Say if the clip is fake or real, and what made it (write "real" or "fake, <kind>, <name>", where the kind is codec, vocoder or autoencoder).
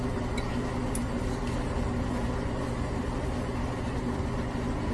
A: real